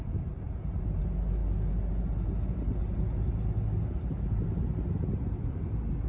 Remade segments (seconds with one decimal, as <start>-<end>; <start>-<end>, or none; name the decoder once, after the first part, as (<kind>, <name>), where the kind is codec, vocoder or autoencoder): none

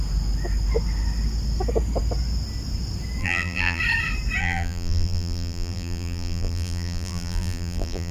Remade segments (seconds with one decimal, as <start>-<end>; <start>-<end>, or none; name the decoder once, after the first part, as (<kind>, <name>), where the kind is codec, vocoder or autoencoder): 3.2-3.8 (vocoder, BigVGAN v2); 4.4-8.1

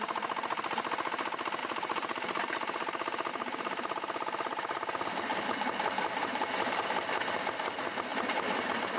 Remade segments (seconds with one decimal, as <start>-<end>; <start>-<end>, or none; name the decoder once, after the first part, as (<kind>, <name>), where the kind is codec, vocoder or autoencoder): 1.6-3.3 (vocoder, BigVGAN v2); 5.3-6.8

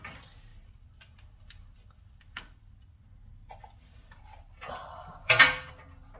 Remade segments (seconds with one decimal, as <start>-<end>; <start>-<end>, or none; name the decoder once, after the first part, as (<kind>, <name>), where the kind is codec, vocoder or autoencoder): 0.5-4.2 (vocoder, BigVGAN v2); 4.8-5.7

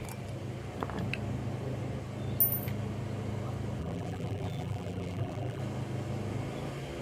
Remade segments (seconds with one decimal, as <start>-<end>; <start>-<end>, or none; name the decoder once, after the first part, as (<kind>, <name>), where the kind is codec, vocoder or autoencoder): 3.8-5.6 (vocoder, BigVGAN v2)

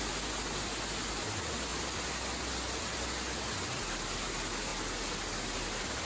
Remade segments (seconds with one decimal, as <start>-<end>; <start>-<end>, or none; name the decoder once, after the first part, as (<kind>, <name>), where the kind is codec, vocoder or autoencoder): none